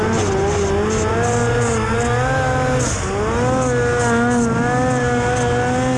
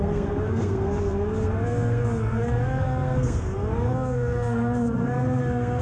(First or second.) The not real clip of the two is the second